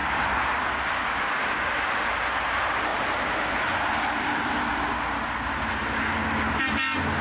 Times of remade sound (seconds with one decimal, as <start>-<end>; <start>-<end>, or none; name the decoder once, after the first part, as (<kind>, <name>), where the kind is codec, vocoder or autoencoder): none